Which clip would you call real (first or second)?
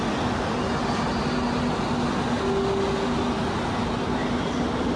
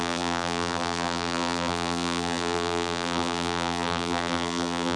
first